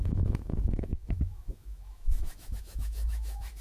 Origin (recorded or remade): remade